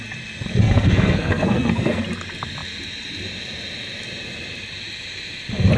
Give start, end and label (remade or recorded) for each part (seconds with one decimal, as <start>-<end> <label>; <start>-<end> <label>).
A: 0.0-0.6 recorded; 0.6-2.0 remade; 2.0-5.8 recorded